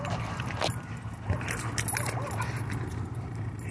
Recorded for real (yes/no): yes